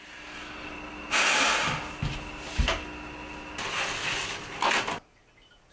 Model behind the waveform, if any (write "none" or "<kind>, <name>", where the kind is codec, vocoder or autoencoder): none